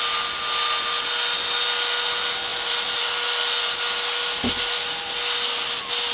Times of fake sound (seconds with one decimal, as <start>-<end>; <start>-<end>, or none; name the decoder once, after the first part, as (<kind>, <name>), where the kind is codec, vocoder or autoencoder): 2.5-3.1 (vocoder, BigVGAN v2)